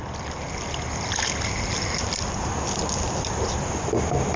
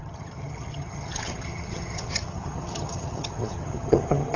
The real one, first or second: first